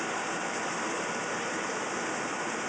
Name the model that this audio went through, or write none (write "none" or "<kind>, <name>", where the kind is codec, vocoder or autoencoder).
vocoder, BigVGAN v2